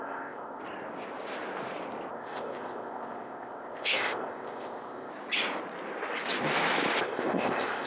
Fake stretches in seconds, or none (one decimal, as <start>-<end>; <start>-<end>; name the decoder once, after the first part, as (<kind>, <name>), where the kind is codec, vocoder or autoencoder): 0.0-0.6 (codec, ZipCodec); 2.1-5.1; 7.0-7.9